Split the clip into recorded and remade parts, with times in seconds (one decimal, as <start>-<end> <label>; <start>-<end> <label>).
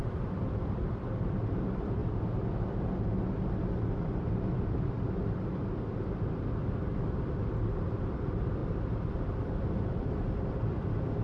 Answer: 0.0-2.0 remade; 2.0-6.8 recorded; 6.8-11.2 remade